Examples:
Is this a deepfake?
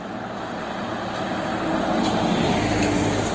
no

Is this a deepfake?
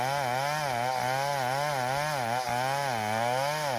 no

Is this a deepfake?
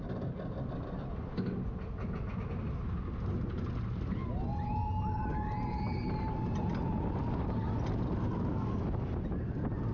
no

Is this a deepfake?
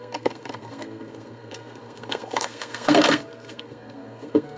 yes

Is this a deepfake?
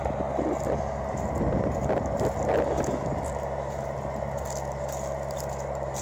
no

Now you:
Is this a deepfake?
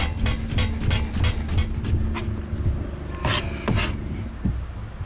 no